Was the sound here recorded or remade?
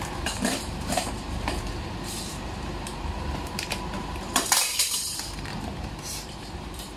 remade